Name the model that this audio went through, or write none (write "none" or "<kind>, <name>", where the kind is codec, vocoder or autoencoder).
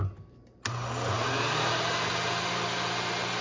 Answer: none